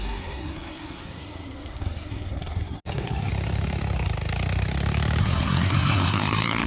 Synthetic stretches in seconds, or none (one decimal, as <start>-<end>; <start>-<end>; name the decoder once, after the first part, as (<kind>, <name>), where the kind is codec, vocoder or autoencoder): 0.0-3.3 (codec, SNAC); 5.2-6.7